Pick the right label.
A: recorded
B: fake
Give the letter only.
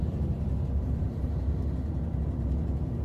A